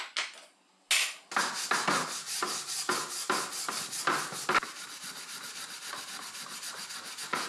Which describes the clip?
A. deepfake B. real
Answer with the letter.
B